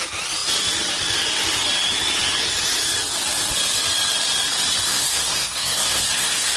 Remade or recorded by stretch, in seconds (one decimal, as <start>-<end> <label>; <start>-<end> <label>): 0.0-4.9 recorded; 4.9-6.6 remade